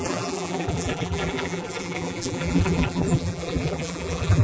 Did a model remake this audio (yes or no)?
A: yes